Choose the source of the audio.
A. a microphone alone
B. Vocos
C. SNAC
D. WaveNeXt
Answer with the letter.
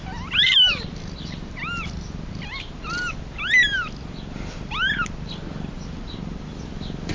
A